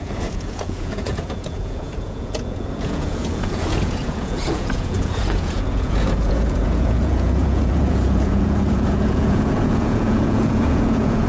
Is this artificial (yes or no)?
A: yes